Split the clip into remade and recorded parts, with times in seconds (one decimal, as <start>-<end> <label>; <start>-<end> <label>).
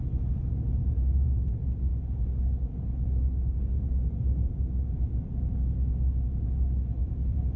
0.0-0.8 recorded; 0.8-1.5 remade; 1.5-7.0 recorded; 7.0-7.6 remade